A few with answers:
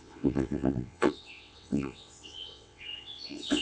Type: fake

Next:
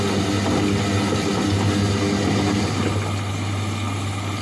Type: real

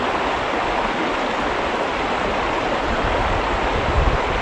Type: real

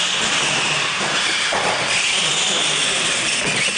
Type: real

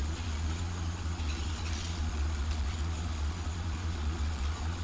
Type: fake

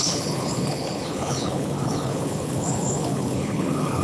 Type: fake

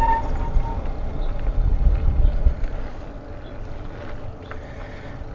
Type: real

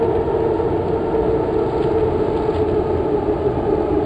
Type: real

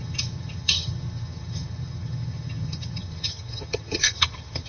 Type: fake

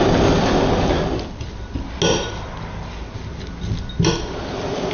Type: real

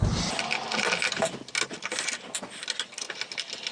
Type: real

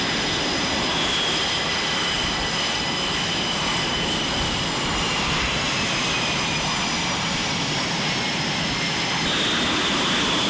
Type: real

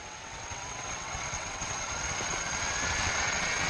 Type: fake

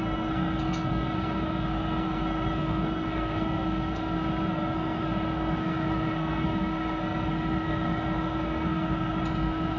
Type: fake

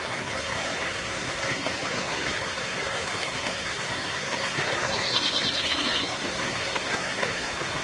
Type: fake